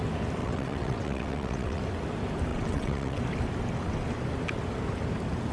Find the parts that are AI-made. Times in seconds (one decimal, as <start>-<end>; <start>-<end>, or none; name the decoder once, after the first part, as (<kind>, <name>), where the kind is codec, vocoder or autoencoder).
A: 0.4-1.8 (vocoder, WaveNeXt); 2.5-3.2